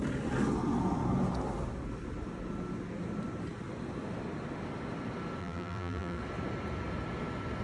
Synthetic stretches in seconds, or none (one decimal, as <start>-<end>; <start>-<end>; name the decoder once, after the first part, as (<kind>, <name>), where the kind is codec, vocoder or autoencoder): 5.4-6.2 (vocoder, BigVGAN v2)